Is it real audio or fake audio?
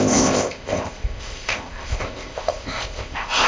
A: fake